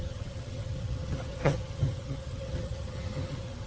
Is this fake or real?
fake